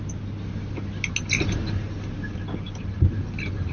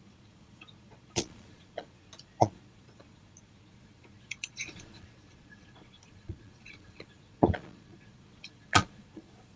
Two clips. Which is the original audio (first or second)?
first